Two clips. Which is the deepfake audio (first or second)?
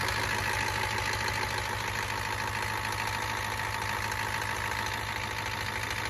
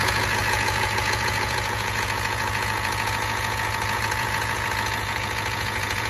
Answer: second